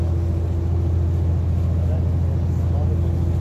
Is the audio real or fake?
real